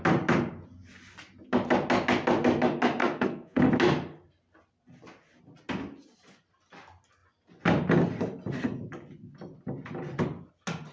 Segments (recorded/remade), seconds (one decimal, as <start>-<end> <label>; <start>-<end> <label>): 0.0-3.0 recorded; 3.0-3.6 remade; 3.6-10.9 recorded